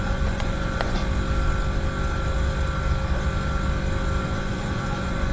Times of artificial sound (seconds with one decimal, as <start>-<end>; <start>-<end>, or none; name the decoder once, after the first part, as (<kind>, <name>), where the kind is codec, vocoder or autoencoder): 0.0-1.0 (vocoder, Vocos); 4.2-5.3